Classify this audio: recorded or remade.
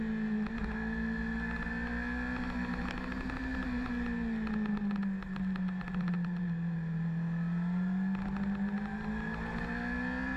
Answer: recorded